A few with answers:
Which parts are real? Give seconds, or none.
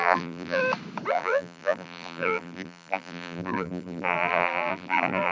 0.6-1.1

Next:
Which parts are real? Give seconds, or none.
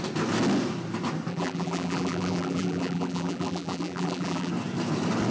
0.0-1.3; 4.5-5.3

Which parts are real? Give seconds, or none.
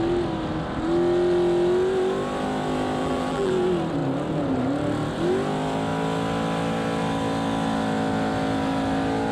0.0-3.0; 3.5-9.3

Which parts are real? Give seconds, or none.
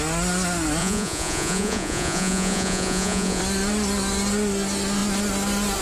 0.0-0.8; 3.4-5.8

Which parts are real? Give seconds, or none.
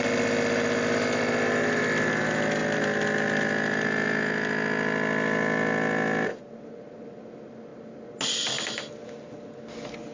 0.0-10.1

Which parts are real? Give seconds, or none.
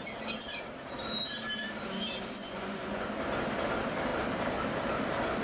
0.0-2.4; 3.1-5.4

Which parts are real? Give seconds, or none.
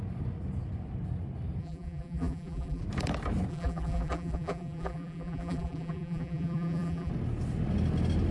0.0-1.6; 2.8-3.5; 7.1-8.3